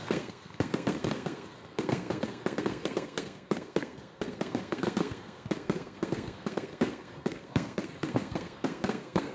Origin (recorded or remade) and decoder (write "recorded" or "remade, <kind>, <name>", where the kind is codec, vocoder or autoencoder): remade, codec, SNAC